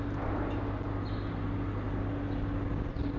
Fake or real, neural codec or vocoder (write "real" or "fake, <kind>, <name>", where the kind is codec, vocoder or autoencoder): real